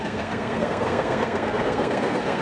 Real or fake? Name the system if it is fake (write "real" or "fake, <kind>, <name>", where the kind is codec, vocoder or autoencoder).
fake, codec, SNAC